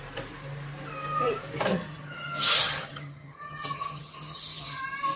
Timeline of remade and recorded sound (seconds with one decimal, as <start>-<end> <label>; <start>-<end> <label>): 0.0-1.7 recorded; 1.7-4.8 remade; 4.8-5.2 recorded